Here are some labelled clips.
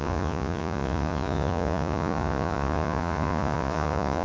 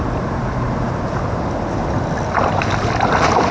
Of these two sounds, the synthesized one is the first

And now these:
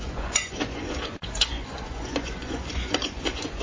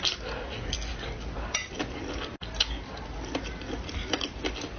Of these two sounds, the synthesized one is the first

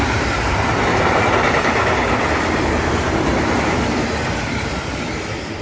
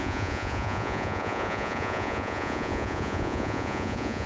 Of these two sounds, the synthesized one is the second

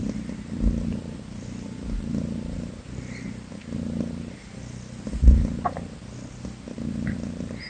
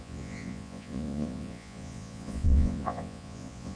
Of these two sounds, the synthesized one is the second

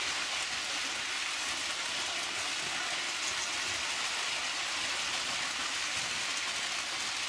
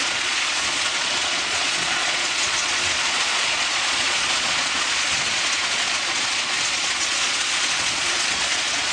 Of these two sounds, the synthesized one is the second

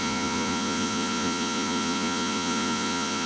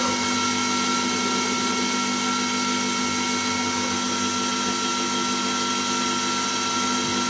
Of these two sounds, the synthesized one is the first